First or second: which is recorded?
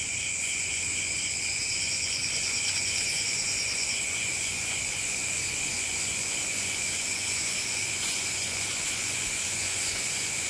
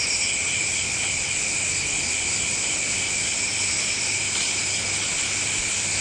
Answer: second